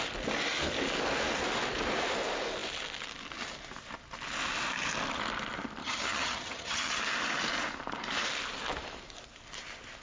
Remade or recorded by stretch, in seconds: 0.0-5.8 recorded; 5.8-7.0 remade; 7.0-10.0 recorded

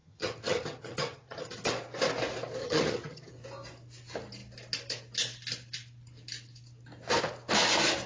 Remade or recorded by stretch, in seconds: 0.0-1.7 remade; 1.7-2.6 recorded; 2.6-3.3 remade; 3.3-8.1 recorded

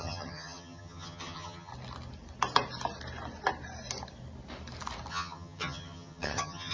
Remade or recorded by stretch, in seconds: 0.0-1.7 remade; 1.7-5.1 recorded; 5.1-6.7 remade

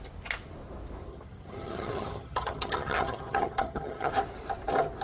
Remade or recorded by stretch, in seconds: 0.0-1.1 recorded; 1.1-4.1 remade; 4.1-5.0 recorded

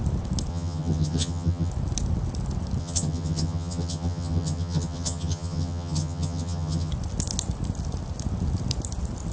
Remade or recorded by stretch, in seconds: 0.0-0.5 recorded; 0.5-1.7 remade; 1.7-2.8 recorded; 2.8-6.9 remade; 6.9-9.3 recorded

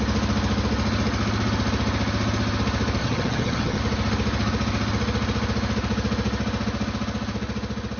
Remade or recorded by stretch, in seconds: 0.0-3.0 recorded; 3.0-3.8 remade; 3.8-8.0 recorded

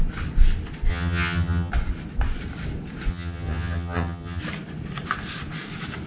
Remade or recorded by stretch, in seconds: 0.0-0.9 recorded; 0.9-1.7 remade; 1.7-3.1 recorded; 3.1-4.4 remade; 4.4-6.1 recorded

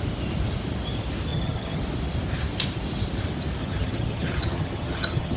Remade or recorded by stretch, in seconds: 0.0-1.3 recorded; 1.3-1.8 remade; 1.8-3.6 recorded; 3.6-5.4 remade